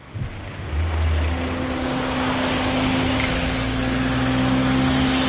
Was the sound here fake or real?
real